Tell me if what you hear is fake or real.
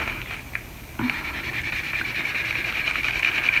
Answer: real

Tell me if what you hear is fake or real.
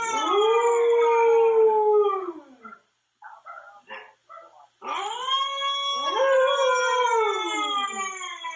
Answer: real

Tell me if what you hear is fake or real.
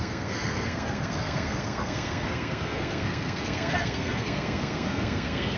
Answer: fake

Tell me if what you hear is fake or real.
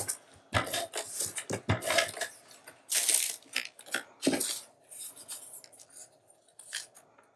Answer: real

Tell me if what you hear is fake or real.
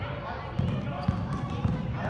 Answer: real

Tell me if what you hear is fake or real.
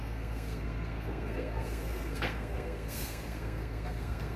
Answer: fake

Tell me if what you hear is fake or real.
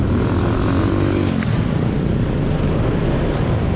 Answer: real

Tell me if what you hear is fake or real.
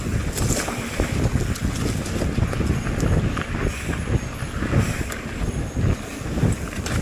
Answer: real